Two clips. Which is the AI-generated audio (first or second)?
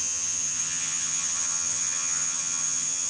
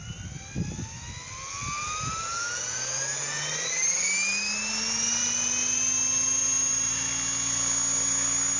first